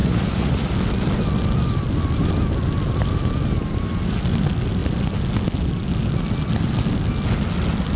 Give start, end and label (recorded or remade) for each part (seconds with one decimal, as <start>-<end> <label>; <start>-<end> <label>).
0.0-0.7 remade; 0.7-8.0 recorded